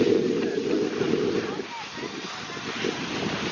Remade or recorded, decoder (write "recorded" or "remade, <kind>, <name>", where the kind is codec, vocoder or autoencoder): recorded